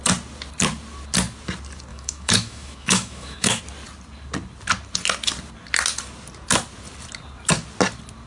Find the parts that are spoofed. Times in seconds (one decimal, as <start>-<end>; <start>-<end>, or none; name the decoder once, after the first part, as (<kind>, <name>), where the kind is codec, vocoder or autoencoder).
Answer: 1.9-3.6 (autoencoder, DAC-VAE)